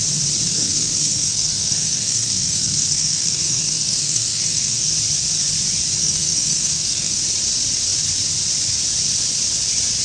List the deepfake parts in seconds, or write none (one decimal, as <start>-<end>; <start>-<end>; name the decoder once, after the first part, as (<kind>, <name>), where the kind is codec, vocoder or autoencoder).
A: 0.5-4.9 (codec, SNAC); 6.0-7.2